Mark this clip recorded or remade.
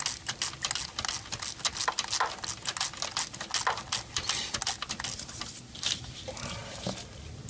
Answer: recorded